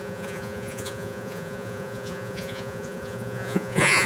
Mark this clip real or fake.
fake